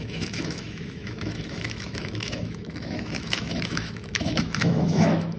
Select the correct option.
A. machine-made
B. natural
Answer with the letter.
A